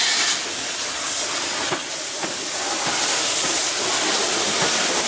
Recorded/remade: recorded